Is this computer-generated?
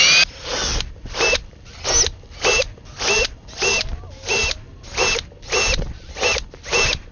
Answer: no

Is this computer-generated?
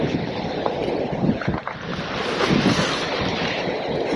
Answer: no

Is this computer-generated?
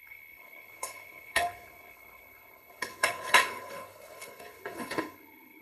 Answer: yes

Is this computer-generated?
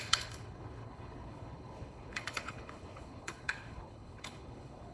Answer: yes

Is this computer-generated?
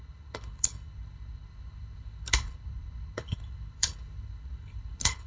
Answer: yes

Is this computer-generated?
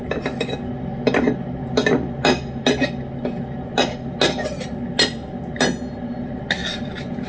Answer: no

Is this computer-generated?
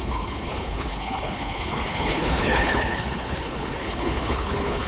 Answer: yes